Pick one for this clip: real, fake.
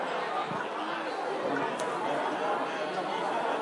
real